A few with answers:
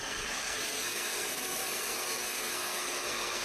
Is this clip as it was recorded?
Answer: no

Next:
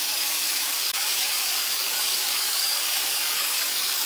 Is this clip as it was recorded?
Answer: no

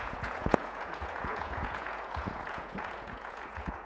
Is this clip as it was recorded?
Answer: no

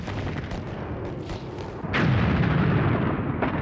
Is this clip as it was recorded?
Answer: yes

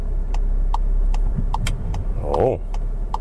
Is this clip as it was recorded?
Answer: no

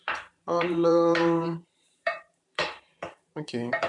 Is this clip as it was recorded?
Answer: no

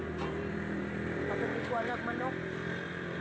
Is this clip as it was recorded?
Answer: no